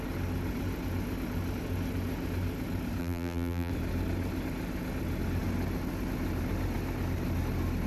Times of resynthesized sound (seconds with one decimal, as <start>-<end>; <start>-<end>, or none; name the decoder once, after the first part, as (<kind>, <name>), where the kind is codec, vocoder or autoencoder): 3.0-3.7 (vocoder, BigVGAN v2)